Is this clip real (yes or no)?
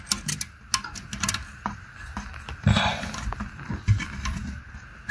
yes